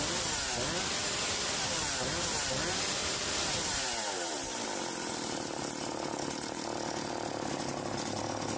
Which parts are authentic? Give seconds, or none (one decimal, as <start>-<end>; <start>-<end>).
0.0-3.0; 4.7-8.6